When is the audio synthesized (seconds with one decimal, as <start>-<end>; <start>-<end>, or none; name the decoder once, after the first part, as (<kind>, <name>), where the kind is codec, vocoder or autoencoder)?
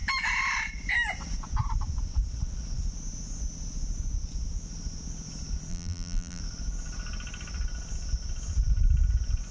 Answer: 5.7-6.4 (vocoder, BigVGAN v2)